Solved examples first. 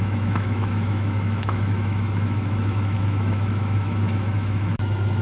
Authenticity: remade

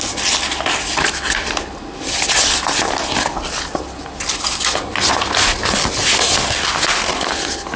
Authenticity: recorded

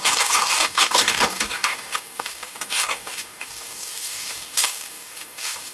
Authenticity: remade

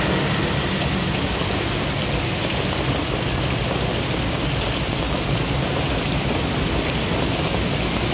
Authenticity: recorded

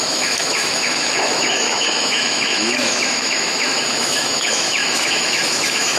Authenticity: remade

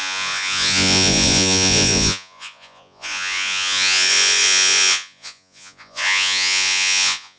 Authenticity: remade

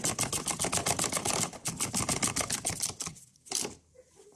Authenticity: recorded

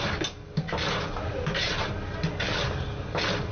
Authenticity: recorded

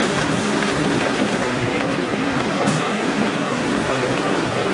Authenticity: remade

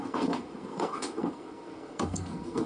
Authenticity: remade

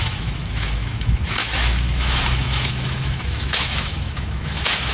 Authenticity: remade